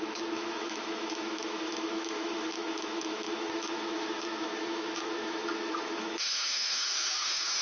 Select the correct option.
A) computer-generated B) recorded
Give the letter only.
A